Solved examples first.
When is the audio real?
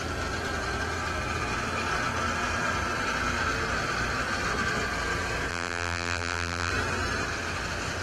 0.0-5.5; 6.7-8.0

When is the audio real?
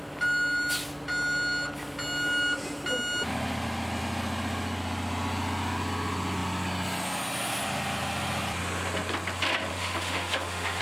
0.0-9.7